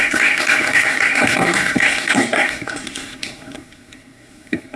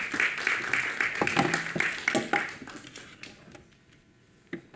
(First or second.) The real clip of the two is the second